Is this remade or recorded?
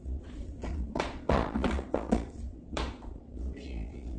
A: remade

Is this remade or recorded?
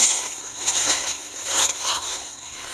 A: remade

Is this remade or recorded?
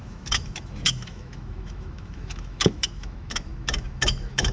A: remade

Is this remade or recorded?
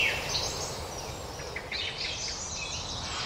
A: recorded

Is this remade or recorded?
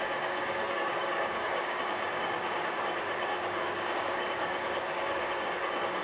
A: remade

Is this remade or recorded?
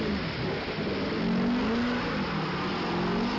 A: recorded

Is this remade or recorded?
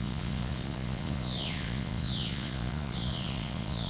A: remade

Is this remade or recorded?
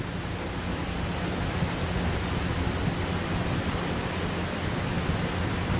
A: recorded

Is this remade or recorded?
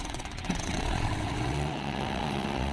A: remade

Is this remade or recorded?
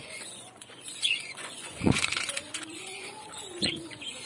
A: remade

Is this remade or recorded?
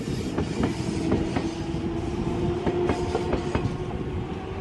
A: recorded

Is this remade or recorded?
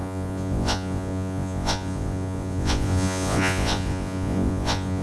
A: remade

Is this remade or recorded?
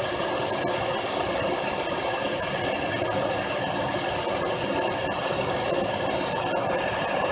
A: recorded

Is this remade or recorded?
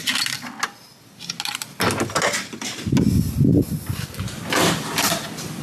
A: recorded